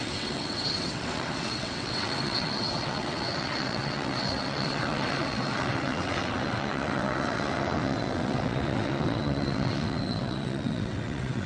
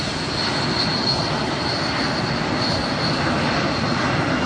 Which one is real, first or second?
second